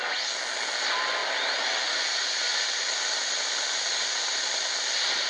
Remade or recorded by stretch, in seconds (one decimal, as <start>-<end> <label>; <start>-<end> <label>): 0.0-5.3 recorded